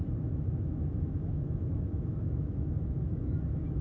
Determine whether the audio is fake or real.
fake